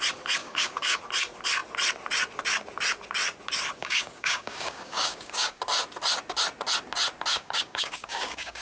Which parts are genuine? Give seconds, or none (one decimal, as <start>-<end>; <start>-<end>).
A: 0.0-0.4; 1.0-3.8; 5.6-7.3